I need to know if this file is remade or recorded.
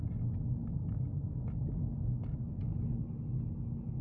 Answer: recorded